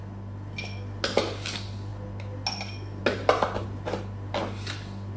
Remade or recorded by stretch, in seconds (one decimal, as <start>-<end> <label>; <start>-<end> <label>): 0.0-5.2 recorded